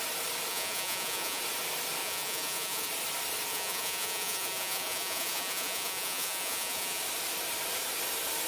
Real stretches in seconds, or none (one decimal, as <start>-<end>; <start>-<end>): 0.0-0.5; 1.4-2.0; 2.9-3.5; 7.0-8.5